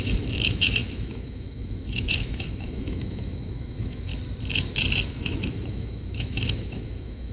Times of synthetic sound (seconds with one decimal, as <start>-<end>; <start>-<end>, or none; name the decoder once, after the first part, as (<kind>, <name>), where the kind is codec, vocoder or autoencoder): 0.0-4.1 (autoencoder, DAC-VAE); 5.1-7.3